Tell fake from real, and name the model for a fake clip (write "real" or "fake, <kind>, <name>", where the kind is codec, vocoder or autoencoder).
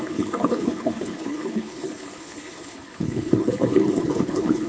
fake, codec, HILCodec